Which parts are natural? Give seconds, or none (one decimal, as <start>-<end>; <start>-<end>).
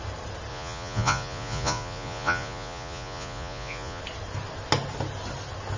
0.0-0.5; 4.0-5.8